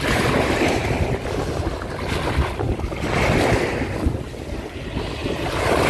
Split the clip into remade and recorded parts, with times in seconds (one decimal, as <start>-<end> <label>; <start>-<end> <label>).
0.0-5.9 recorded